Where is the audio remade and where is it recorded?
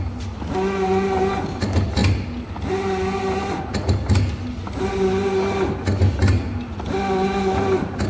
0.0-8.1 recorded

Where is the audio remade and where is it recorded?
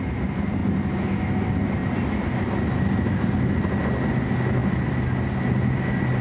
0.0-6.2 recorded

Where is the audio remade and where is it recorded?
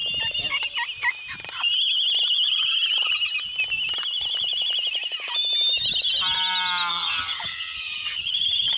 0.0-6.9 recorded; 6.9-8.8 remade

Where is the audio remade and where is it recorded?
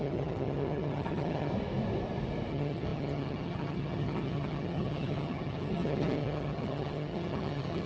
0.0-1.5 remade; 1.5-2.5 recorded; 2.5-7.9 remade